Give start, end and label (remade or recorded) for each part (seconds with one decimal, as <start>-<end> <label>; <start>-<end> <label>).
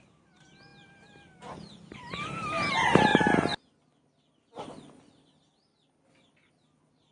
0.0-7.1 recorded